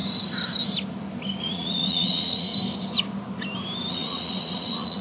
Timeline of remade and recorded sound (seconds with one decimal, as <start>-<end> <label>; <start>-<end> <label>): 0.0-1.4 recorded; 1.4-2.5 remade; 2.5-3.9 recorded; 3.9-5.0 remade

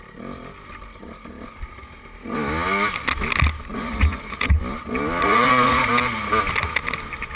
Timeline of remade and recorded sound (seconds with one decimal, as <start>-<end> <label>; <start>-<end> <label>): 0.0-3.7 recorded; 3.7-4.6 remade; 4.6-5.2 recorded; 5.2-5.9 remade; 5.9-7.4 recorded

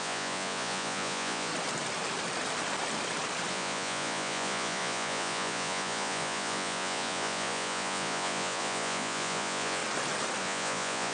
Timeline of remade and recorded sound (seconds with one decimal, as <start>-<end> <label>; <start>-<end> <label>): 0.0-1.5 remade; 1.5-3.5 recorded; 3.5-9.8 remade; 9.8-10.4 recorded; 10.4-11.1 remade

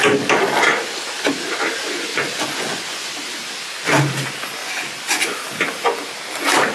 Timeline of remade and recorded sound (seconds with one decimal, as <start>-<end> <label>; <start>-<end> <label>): 0.0-2.1 recorded; 2.1-3.1 remade; 3.1-4.6 recorded; 4.6-5.4 remade; 5.4-6.7 recorded

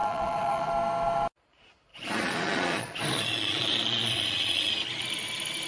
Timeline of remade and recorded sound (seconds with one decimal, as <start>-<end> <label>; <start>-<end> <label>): 0.0-0.7 remade; 0.7-1.9 recorded; 1.9-4.7 remade; 4.7-5.7 recorded